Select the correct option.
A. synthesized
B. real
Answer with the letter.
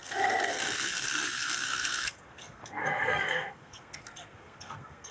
A